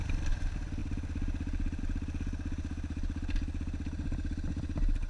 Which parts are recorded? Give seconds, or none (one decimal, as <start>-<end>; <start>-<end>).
0.0-5.1